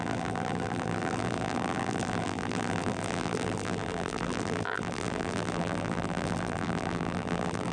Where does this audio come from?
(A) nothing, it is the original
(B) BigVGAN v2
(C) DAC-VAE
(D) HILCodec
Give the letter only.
B